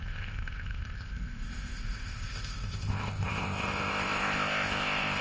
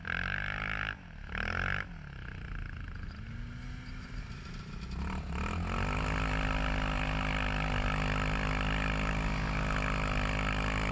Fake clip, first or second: first